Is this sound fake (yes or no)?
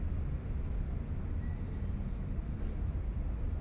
no